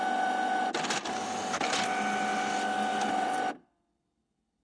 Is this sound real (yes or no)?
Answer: yes